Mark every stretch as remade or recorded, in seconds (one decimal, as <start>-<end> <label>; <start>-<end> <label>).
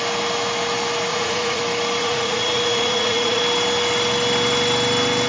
0.0-1.1 recorded; 1.1-1.6 remade; 1.6-2.0 recorded; 2.0-3.4 remade; 3.4-5.3 recorded